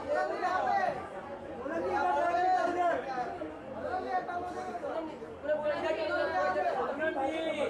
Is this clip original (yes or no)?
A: yes